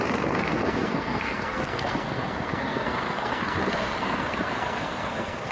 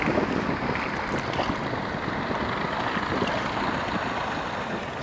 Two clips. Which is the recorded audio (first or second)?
second